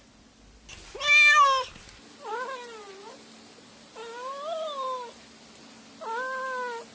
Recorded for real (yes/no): yes